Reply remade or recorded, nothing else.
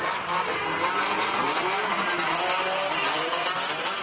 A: recorded